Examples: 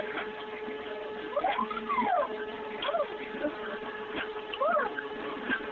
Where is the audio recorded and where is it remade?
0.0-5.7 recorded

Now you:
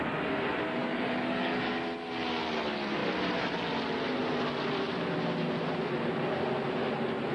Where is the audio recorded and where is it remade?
0.0-0.8 recorded; 0.8-1.7 remade; 1.7-7.3 recorded

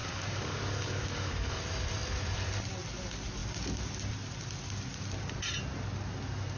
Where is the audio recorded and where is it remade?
0.0-1.6 remade; 1.6-6.6 recorded